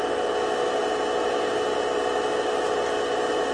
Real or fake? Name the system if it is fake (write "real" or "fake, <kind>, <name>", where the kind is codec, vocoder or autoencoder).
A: real